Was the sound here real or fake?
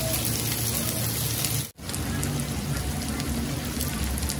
real